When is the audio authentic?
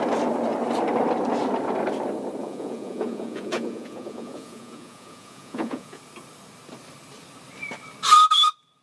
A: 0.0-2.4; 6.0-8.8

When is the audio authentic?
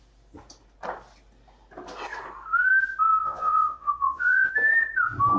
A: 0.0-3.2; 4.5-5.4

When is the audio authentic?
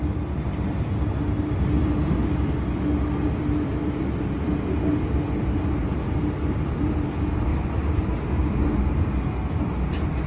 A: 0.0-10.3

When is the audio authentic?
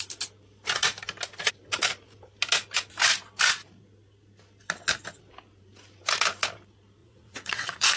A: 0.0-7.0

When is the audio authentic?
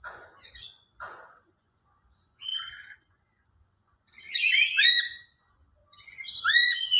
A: none